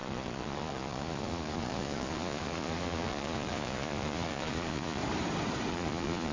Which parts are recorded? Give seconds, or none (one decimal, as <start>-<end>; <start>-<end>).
5.0-5.7